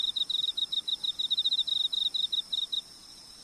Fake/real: fake